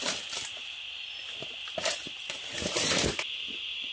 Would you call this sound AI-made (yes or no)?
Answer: no